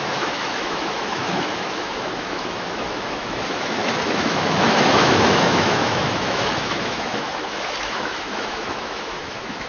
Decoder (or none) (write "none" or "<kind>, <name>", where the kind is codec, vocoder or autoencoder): autoencoder, DAC-VAE